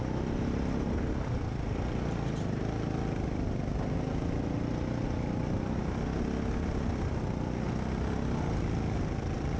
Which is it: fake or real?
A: real